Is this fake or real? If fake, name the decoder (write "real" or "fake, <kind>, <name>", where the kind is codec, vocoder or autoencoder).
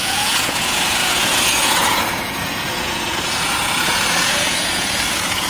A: fake, vocoder, Vocos